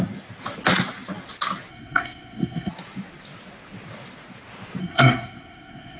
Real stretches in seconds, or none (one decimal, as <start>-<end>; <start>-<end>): 0.0-1.7; 2.7-4.8